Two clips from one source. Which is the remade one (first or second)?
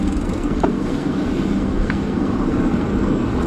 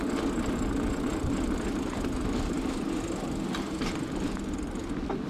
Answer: first